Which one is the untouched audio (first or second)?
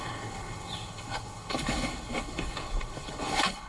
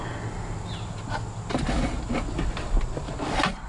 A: second